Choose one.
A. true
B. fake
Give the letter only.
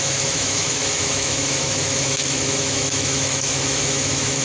B